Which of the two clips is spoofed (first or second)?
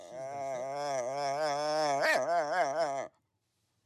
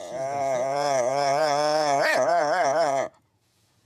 second